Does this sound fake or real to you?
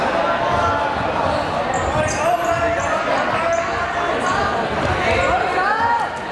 real